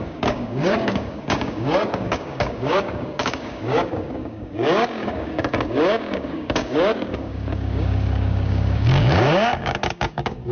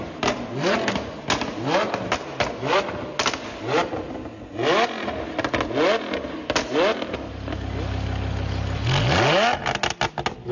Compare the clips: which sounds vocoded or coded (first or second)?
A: first